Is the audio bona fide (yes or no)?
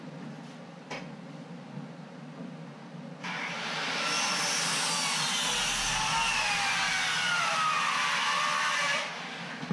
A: yes